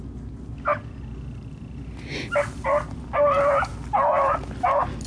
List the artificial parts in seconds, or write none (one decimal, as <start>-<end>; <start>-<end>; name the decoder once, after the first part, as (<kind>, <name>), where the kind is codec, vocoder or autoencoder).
none